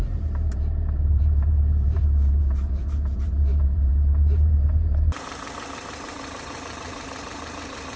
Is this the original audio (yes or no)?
no